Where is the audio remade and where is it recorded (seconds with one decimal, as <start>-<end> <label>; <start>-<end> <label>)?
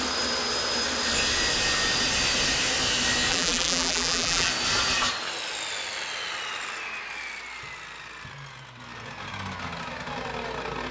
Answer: 0.0-3.3 recorded; 3.3-4.5 remade; 4.5-10.9 recorded